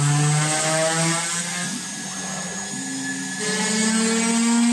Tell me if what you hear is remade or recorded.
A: recorded